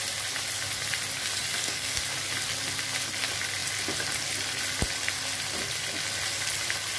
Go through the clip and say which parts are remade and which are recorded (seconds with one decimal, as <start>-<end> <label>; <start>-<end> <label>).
0.0-1.5 recorded; 1.5-2.0 remade; 2.0-7.0 recorded